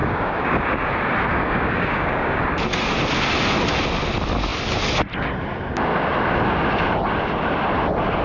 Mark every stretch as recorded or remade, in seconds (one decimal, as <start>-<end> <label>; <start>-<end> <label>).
0.0-0.9 remade; 0.9-1.3 recorded; 1.3-2.4 remade; 2.4-8.2 recorded